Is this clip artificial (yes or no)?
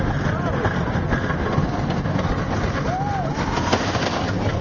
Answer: no